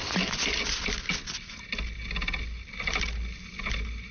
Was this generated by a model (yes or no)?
no